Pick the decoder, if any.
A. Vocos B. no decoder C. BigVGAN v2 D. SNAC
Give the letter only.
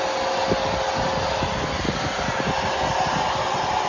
B